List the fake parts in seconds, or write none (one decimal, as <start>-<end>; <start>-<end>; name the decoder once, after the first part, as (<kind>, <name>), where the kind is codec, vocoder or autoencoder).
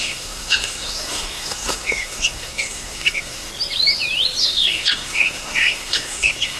0.0-3.5 (codec, SNAC); 4.4-6.6